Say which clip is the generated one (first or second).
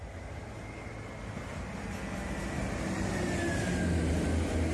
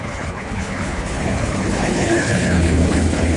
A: second